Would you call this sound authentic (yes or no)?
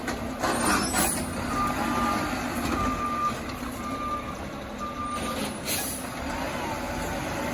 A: yes